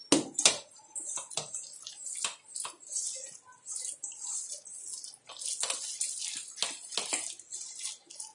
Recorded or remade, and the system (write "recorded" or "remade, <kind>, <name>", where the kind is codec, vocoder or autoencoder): recorded